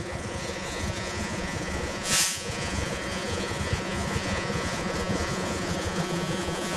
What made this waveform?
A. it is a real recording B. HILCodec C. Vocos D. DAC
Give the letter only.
C